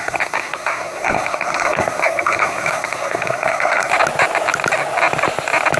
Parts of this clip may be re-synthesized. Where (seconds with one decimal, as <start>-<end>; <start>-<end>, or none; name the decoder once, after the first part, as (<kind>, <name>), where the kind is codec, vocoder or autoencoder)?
0.0-3.9 (codec, SNAC)